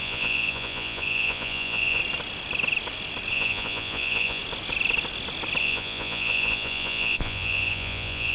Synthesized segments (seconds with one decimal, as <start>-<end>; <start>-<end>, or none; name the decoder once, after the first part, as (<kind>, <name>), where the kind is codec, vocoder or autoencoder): 0.0-2.0 (vocoder, Vocos); 3.3-4.4; 5.6-8.3